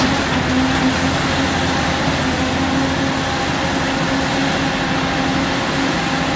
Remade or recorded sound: recorded